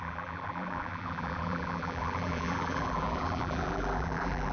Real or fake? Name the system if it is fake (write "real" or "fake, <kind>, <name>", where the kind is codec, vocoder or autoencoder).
fake, vocoder, BigVGAN v2